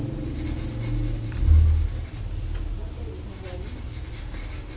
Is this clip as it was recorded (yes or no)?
yes